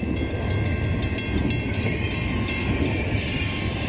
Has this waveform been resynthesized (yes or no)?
no